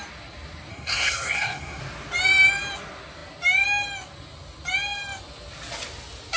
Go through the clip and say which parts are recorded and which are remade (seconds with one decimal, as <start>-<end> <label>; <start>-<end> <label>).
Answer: 0.0-0.7 recorded; 0.7-1.8 remade; 1.8-6.4 recorded